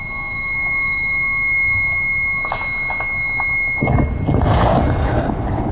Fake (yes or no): no